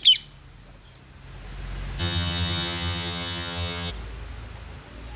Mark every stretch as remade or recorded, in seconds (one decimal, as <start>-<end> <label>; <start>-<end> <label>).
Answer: 0.0-2.0 recorded; 2.0-3.9 remade; 3.9-5.2 recorded